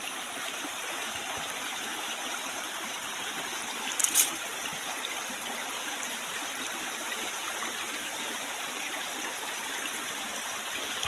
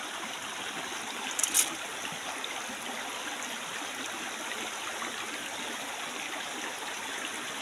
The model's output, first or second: first